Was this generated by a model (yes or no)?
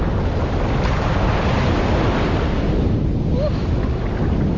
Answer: no